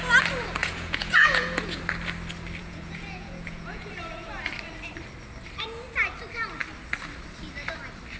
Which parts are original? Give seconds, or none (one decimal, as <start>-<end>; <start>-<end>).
0.0-0.6; 1.8-2.6; 3.9-8.2